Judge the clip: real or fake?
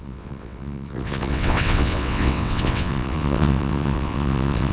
fake